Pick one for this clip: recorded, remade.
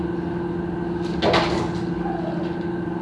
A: recorded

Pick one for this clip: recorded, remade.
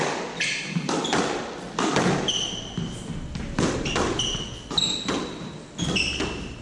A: recorded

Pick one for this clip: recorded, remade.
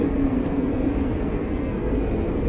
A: remade